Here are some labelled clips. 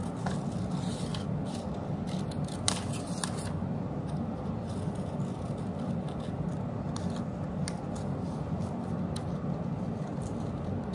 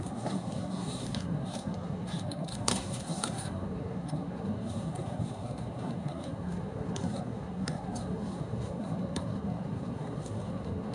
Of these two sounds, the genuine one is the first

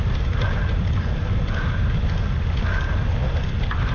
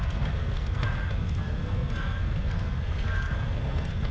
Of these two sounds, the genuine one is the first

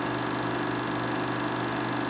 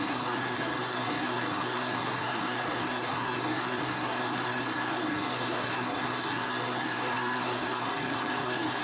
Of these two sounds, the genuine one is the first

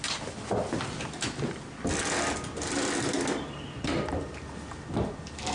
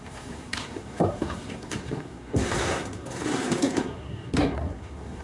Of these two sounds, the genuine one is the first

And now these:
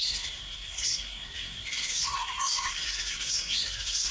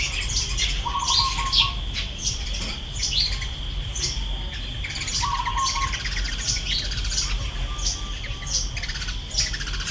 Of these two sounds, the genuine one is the second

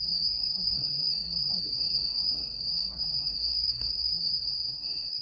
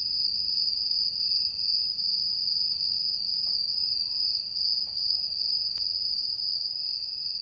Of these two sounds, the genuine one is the second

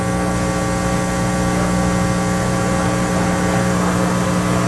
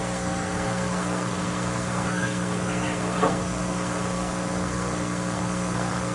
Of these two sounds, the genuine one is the first